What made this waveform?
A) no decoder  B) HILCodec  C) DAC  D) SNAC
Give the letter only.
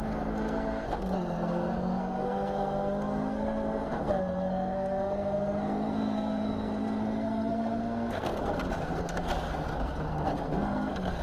D